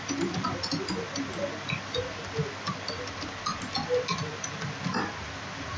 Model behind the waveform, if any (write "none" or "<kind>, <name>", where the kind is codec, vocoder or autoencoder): none